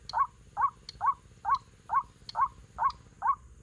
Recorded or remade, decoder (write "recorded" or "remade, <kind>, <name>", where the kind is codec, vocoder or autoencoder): recorded